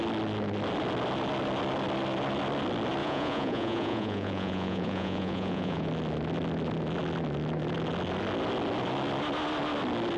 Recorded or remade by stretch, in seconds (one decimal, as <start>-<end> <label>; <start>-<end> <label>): 0.0-3.0 recorded; 3.0-5.9 remade; 5.9-10.2 recorded